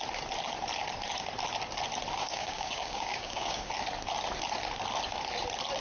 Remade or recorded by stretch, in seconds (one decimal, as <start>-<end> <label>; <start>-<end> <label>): 0.0-2.2 recorded; 2.2-3.7 remade; 3.7-5.8 recorded